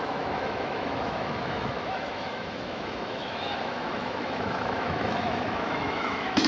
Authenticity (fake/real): fake